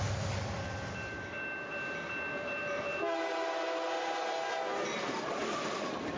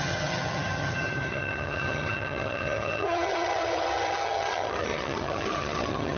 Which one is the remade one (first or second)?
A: second